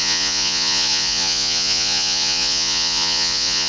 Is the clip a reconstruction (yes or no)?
yes